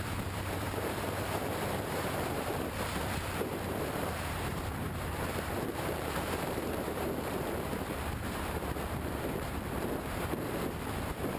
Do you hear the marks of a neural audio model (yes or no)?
yes